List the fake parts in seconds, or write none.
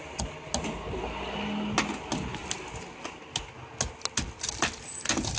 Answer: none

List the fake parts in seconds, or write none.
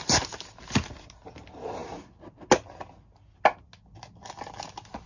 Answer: none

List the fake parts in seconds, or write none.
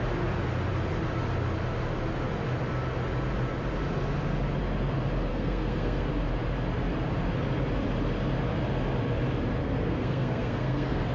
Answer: 5.3-6.1 (codec, SNAC); 9.6-11.1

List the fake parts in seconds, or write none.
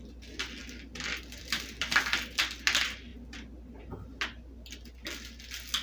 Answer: none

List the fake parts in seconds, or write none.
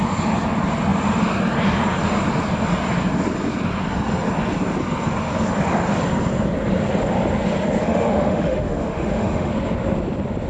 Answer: 7.8-9.5 (autoencoder, DAC-VAE)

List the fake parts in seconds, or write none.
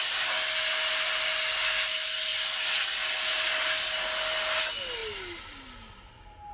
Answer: none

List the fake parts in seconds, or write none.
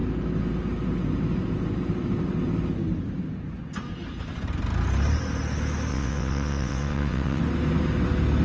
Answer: 5.9-7.4 (vocoder, WaveNeXt)